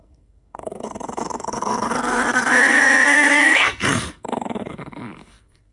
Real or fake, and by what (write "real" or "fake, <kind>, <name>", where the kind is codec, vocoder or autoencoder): fake, codec, SNAC